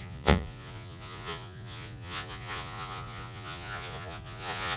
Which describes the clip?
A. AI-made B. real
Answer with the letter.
A